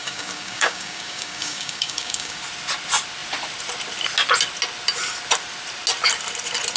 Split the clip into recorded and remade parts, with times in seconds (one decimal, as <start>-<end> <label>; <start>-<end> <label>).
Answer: 0.0-2.4 remade; 2.4-6.8 recorded